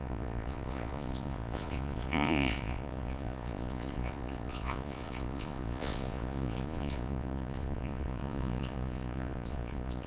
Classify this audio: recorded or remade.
remade